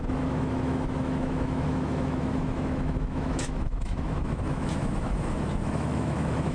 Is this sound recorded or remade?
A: remade